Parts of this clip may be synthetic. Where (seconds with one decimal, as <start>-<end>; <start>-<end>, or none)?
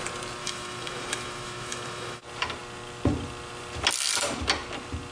0.4-2.2